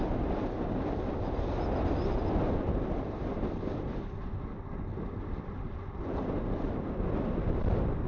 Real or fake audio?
real